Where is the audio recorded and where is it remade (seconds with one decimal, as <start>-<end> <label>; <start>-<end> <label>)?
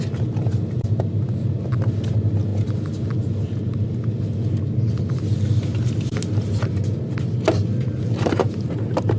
0.0-9.2 recorded